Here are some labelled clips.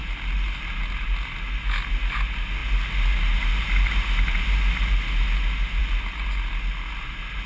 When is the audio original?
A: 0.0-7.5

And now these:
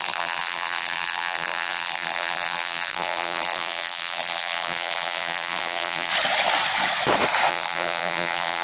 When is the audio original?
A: 6.1-7.5

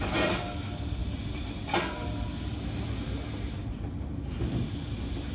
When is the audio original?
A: 0.0-1.0; 4.2-5.3

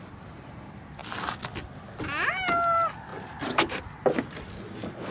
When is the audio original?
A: 0.0-3.1; 3.8-5.1

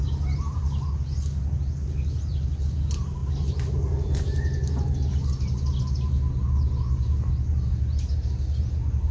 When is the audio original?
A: 0.0-9.1

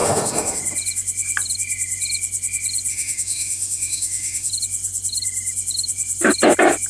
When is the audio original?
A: 0.6-2.9; 4.5-6.9

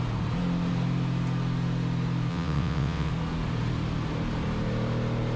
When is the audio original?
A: 0.0-2.3; 3.1-5.4

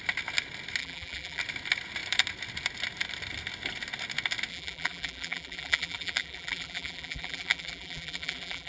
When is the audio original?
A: 0.0-0.8; 1.4-4.5